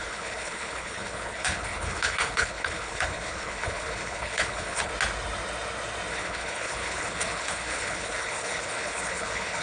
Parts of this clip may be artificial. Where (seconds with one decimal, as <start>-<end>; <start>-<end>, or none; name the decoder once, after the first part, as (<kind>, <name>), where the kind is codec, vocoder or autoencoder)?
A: 0.0-4.9 (codec, HILCodec); 6.1-9.6